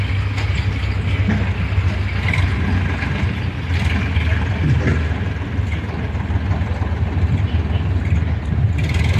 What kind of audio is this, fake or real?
real